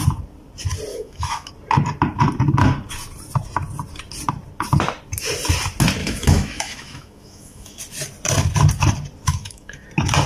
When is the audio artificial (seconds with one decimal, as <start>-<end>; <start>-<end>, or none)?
0.9-1.5; 6.0-7.8; 9.3-9.9